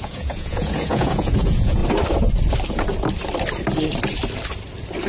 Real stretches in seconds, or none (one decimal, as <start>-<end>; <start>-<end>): 1.8-5.1